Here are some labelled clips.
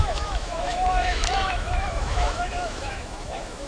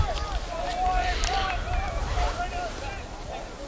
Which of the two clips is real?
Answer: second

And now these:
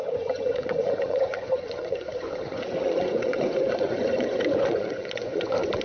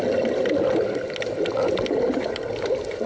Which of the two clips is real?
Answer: second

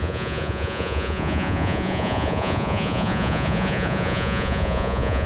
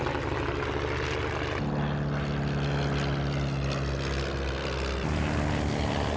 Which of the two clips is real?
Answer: second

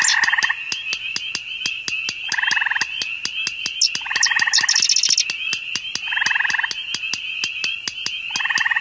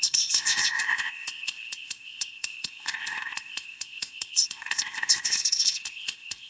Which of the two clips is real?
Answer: first